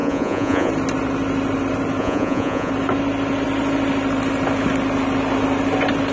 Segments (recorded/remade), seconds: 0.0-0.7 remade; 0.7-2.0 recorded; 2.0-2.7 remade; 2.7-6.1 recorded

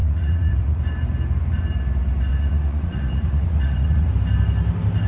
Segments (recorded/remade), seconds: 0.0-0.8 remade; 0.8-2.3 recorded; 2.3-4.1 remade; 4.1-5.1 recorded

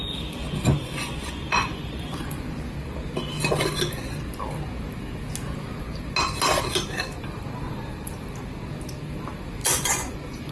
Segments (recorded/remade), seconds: 0.0-0.9 recorded; 0.9-2.7 remade; 2.7-9.6 recorded; 9.6-10.5 remade

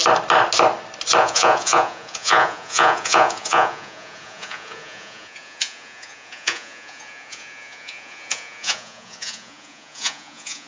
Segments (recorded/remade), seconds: 0.0-1.2 recorded; 1.2-10.7 remade

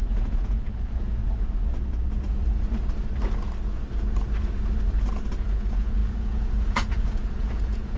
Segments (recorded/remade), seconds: 0.0-1.2 remade; 1.2-5.4 recorded; 5.4-8.0 remade